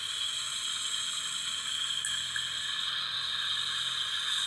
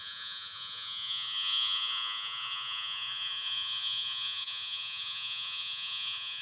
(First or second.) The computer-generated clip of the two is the second